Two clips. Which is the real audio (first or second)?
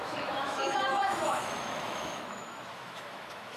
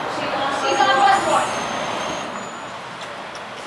second